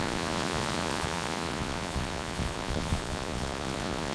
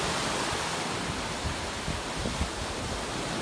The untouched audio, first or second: second